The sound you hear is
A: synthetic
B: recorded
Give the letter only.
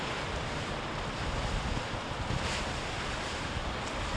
B